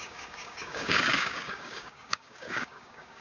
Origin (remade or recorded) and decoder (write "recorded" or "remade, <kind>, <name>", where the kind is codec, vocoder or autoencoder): remade, codec, DAC